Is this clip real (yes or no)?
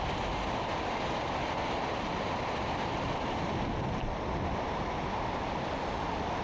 yes